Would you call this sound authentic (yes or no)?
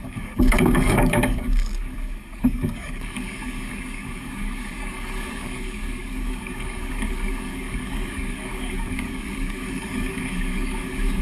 no